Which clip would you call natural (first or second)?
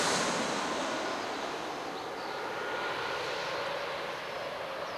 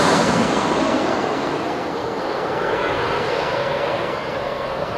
first